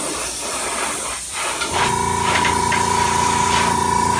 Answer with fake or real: fake